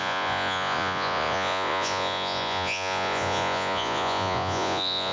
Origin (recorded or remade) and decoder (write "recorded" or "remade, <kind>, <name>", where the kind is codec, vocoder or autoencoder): remade, vocoder, Vocos